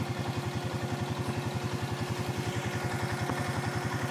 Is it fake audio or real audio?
real